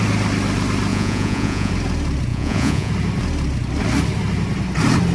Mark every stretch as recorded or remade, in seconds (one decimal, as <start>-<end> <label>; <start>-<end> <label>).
0.0-0.9 recorded; 0.9-1.7 remade; 1.7-2.3 recorded; 2.3-2.9 remade; 2.9-5.1 recorded